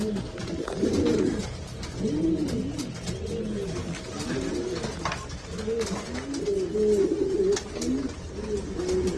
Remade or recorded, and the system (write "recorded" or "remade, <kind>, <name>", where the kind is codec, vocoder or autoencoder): recorded